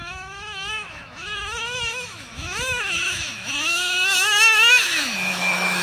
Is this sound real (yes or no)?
no